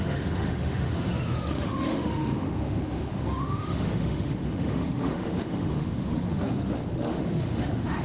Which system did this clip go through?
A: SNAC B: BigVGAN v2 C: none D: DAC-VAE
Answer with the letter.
D